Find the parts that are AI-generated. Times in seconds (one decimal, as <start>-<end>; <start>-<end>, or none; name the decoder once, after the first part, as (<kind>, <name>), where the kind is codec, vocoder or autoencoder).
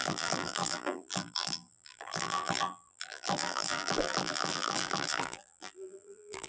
0.0-6.5 (vocoder, BigVGAN v2)